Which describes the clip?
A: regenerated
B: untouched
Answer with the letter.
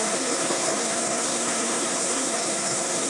A